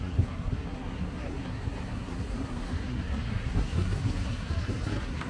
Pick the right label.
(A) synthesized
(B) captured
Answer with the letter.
A